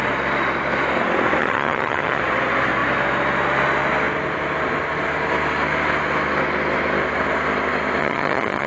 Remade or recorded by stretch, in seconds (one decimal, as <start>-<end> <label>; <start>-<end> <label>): 0.0-1.4 recorded; 1.4-2.2 remade; 2.2-8.0 recorded; 8.0-8.7 remade